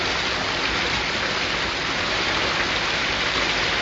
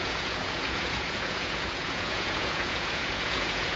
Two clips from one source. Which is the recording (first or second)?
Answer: first